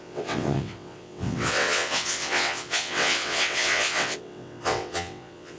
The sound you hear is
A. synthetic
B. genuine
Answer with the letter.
A